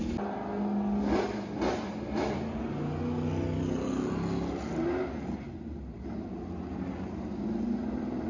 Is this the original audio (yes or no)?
yes